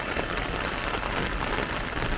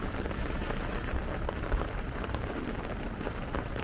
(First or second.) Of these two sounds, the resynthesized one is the second